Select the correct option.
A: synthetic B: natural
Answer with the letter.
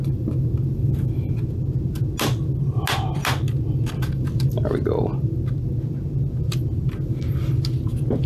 B